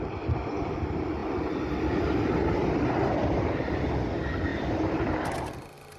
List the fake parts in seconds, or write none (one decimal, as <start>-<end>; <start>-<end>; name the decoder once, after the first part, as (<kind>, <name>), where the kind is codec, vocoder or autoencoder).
none